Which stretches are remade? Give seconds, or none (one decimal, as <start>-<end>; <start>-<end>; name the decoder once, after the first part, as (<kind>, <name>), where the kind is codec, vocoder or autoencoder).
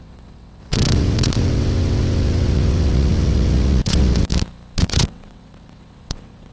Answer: 0.0-4.3 (vocoder, WaveNeXt); 4.8-6.5